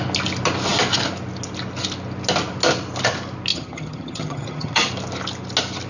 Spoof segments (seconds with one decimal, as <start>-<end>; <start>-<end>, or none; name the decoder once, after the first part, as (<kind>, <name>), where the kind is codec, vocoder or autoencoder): 3.5-4.9 (vocoder, HiFi-GAN)